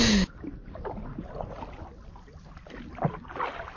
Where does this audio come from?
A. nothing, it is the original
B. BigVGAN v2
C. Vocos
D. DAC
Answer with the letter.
A